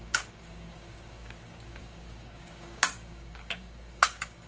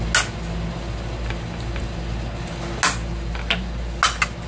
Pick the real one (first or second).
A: second